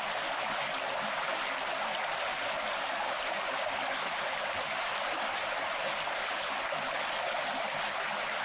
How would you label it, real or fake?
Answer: real